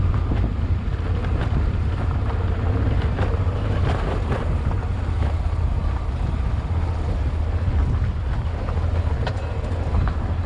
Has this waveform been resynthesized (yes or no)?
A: no